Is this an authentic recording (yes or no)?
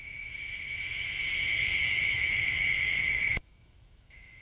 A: no